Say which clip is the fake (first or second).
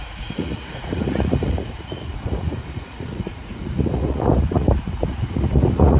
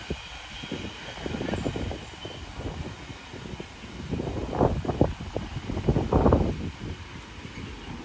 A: first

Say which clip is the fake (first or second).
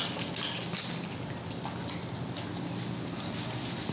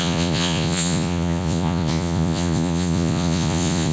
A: second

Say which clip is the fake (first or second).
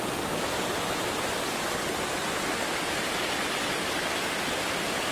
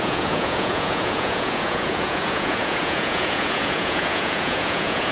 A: second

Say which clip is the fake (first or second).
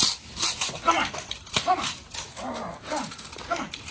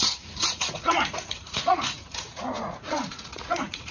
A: second